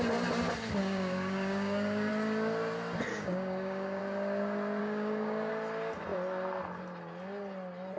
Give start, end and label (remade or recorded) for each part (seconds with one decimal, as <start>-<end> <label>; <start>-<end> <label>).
0.0-0.8 recorded; 0.8-2.1 remade; 2.1-3.1 recorded; 3.1-4.0 remade; 4.0-4.8 recorded; 4.8-5.5 remade; 5.5-8.0 recorded